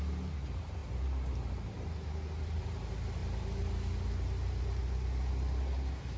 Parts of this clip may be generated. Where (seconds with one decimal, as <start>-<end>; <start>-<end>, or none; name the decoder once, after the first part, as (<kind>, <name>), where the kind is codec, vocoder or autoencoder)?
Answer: none